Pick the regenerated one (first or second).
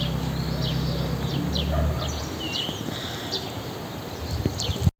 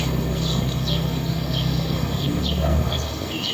second